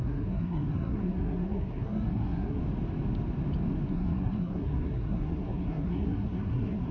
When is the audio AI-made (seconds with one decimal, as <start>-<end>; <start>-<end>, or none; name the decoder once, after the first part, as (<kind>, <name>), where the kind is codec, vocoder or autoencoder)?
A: 0.0-2.6 (codec, SNAC); 3.9-6.9